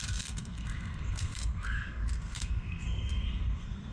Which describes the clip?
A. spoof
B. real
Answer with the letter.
A